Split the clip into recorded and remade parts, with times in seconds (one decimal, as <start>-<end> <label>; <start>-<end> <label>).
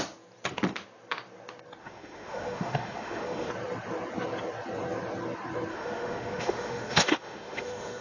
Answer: 0.0-1.8 recorded; 1.8-3.5 remade; 3.5-5.7 recorded; 5.7-8.0 remade